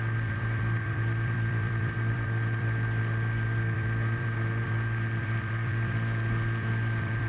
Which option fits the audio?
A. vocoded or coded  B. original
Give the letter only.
A